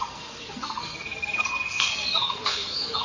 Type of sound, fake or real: fake